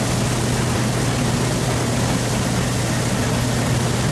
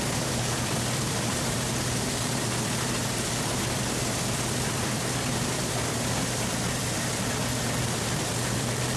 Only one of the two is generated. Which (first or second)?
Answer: second